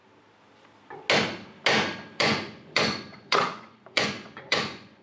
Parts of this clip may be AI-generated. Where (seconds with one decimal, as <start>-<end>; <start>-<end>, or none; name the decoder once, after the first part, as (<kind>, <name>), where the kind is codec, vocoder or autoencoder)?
2.2-5.0 (vocoder, Vocos)